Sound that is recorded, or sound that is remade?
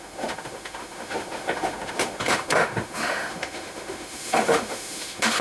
remade